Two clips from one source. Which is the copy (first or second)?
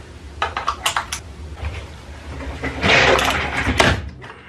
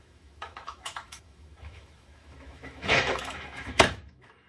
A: second